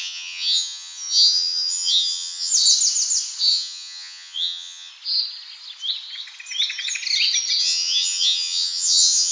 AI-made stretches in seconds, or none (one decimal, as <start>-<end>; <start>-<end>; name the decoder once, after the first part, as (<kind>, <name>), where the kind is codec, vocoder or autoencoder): 0.0-2.5 (vocoder, HiFi-GAN); 3.5-4.9; 7.6-9.3